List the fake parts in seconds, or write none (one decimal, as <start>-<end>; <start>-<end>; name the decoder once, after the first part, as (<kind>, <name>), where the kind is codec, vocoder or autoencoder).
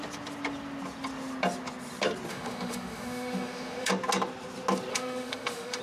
2.3-3.9 (autoencoder, DAC-VAE); 4.9-5.8